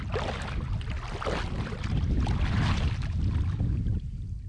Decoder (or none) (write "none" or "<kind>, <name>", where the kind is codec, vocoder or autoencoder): none